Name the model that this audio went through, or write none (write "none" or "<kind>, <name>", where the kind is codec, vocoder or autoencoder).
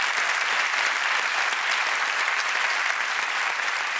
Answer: vocoder, BigVGAN v2